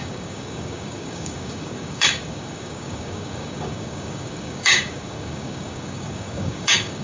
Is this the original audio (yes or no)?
no